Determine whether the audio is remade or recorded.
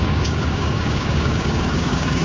remade